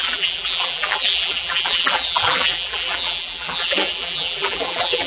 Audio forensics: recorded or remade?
remade